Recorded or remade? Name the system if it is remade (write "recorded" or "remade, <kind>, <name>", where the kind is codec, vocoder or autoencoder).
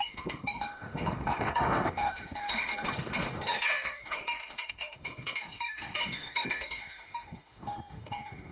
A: remade, autoencoder, DAC-VAE